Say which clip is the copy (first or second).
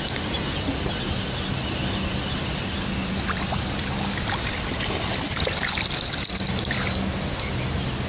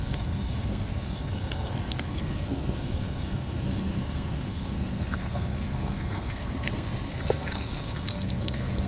second